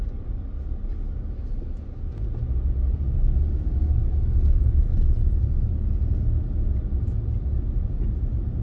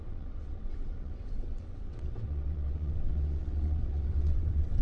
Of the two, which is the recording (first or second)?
first